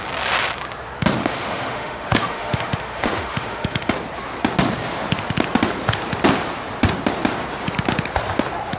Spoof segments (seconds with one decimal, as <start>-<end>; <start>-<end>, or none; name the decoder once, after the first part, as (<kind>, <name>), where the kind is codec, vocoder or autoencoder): 1.2-3.9 (autoencoder, DAC-VAE)